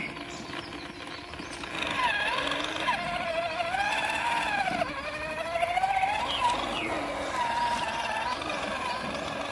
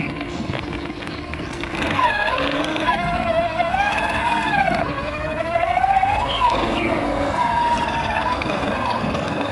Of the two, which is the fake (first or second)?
second